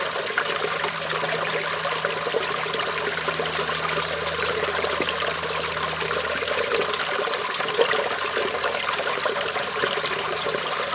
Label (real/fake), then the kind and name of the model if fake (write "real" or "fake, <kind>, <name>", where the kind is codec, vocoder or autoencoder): real